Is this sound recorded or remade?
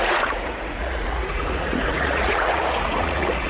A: remade